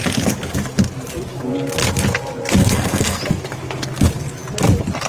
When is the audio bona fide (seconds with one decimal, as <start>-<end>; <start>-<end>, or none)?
0.0-2.6; 3.2-5.1